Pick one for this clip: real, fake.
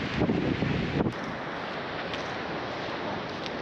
real